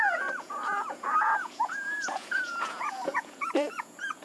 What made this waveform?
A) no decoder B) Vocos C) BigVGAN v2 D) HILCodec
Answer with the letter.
B